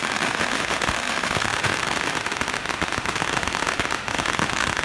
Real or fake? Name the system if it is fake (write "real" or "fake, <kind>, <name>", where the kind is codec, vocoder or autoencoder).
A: fake, autoencoder, DAC-VAE